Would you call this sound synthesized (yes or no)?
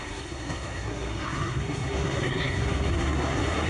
yes